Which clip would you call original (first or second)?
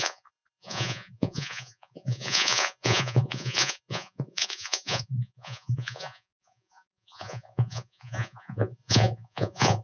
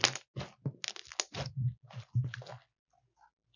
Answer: second